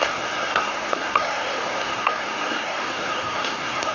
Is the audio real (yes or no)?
no